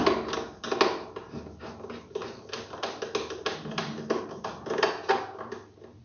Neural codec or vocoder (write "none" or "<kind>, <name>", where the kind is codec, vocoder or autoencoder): none